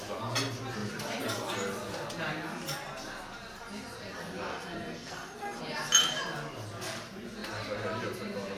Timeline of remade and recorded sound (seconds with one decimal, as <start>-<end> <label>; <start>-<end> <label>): 0.0-4.5 recorded; 4.5-5.6 remade; 5.6-8.6 recorded